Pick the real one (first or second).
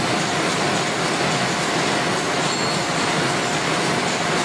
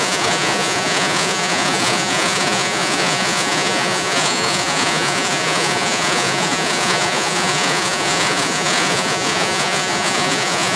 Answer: first